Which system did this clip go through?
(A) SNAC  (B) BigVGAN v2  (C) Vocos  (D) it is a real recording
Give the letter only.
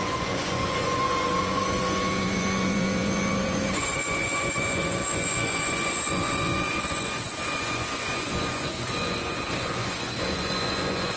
C